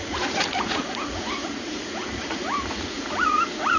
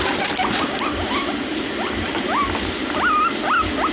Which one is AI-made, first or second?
first